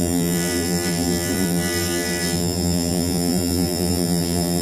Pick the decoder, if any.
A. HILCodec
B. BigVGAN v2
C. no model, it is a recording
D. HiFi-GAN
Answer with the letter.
B